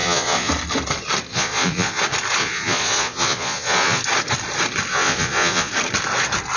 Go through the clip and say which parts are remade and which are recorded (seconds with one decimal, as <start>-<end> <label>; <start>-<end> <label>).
0.0-0.5 remade; 0.5-1.3 recorded; 1.3-2.0 remade; 2.0-2.4 recorded; 2.4-4.0 remade; 4.0-4.9 recorded; 4.9-5.7 remade; 5.7-6.6 recorded